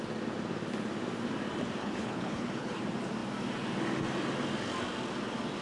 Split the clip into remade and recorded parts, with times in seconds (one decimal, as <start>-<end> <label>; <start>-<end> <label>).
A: 0.0-1.8 recorded; 1.8-2.8 remade; 2.8-5.6 recorded